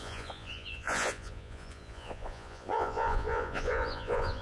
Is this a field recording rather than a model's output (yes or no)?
no